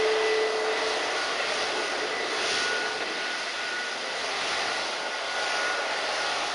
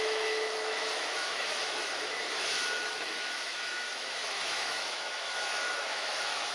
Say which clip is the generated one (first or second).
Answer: second